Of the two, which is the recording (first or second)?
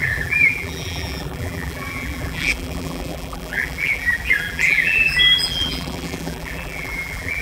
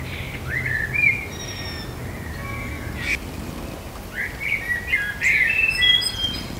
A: second